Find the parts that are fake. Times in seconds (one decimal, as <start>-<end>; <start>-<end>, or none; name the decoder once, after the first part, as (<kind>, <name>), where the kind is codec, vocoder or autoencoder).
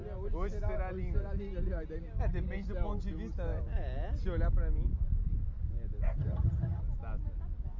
6.2-6.8 (vocoder, HiFi-GAN)